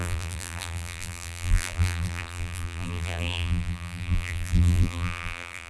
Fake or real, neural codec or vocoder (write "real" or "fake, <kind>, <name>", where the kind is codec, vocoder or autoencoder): fake, vocoder, BigVGAN v2